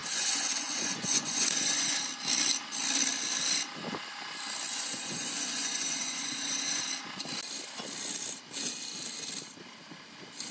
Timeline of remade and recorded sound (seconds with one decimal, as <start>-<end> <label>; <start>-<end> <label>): 0.0-2.0 remade; 2.0-4.7 recorded; 4.7-6.8 remade; 6.8-10.5 recorded